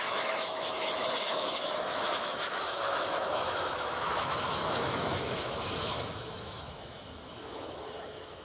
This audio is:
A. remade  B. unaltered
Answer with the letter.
A